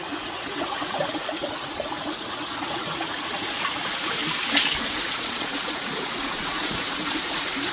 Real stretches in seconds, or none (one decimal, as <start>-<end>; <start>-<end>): 4.2-4.9